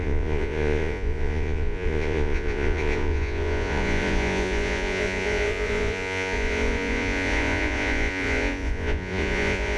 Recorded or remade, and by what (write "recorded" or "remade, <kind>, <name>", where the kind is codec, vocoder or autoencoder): remade, vocoder, Vocos